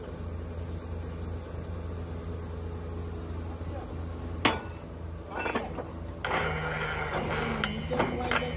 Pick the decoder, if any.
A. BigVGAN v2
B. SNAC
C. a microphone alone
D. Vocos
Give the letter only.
C